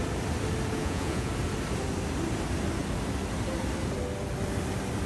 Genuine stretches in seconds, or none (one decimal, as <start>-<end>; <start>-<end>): 0.0-0.8; 1.3-5.1